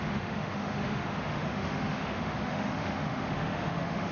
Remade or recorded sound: remade